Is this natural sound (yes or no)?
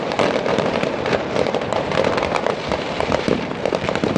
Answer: no